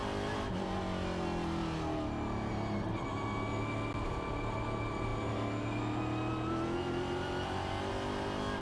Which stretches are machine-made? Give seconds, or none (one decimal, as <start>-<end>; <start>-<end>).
none